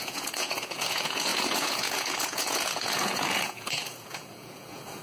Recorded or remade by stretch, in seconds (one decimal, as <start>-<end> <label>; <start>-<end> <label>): 0.0-5.0 remade